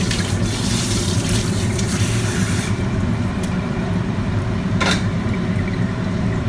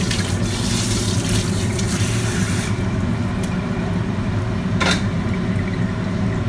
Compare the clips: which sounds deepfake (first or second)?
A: first